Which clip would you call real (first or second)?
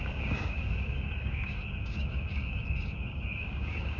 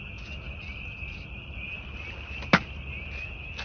second